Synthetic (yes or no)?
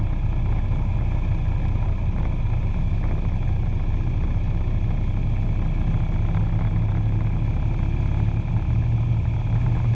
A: no